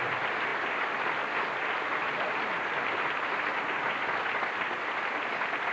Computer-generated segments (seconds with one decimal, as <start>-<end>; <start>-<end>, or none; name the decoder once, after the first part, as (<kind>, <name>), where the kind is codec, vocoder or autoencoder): none